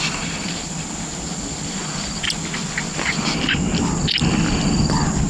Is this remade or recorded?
recorded